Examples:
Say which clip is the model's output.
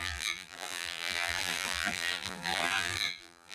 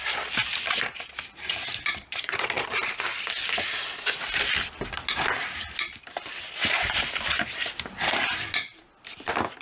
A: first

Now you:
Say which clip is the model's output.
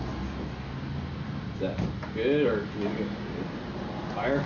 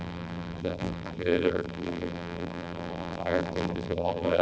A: second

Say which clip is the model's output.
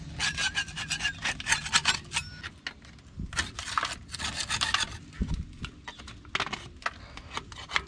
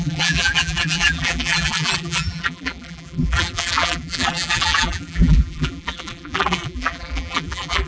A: second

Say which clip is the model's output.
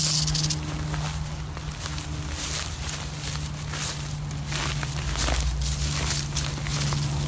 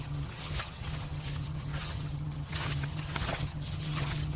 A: second